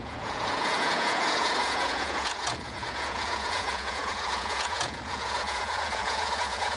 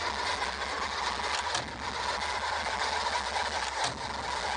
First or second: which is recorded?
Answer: second